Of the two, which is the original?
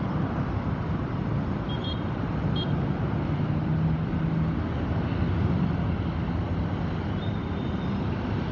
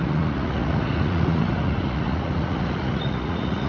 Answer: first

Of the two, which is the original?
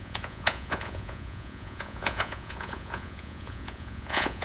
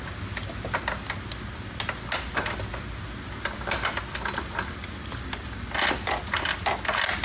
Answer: second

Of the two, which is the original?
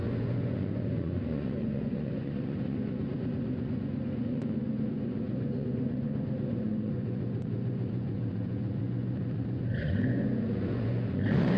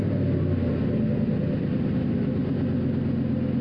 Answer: second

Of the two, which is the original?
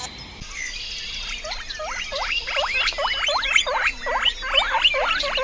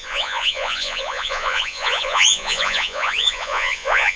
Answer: first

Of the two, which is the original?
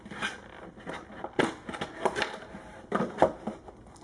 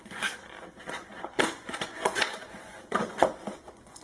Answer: first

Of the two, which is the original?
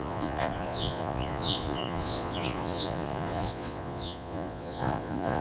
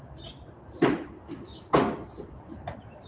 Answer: second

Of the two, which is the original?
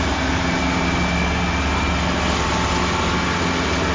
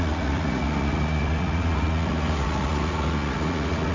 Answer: first